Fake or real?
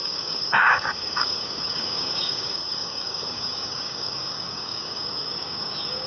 fake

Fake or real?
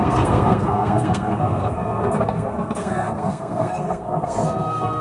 fake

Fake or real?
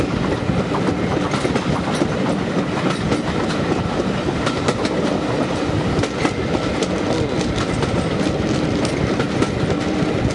real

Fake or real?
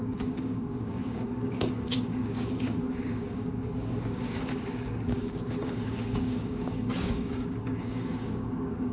fake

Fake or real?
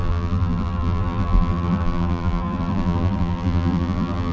fake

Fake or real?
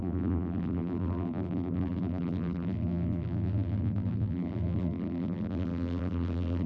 fake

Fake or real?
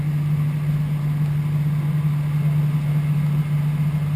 real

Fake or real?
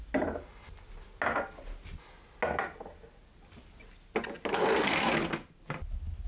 real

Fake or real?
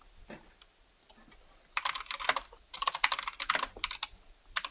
real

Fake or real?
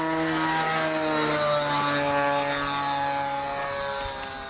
real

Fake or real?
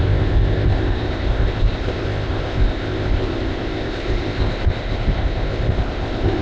fake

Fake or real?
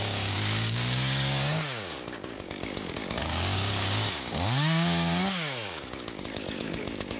fake